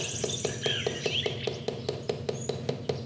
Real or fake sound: real